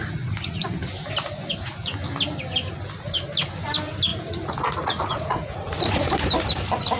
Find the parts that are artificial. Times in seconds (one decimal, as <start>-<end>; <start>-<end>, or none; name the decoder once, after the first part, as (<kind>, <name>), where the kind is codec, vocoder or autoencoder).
0.0-0.7 (vocoder, Vocos); 4.1-6.1